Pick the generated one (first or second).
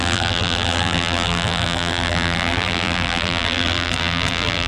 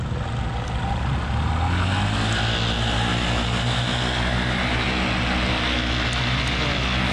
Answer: first